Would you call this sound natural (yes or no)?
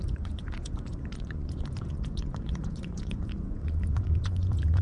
no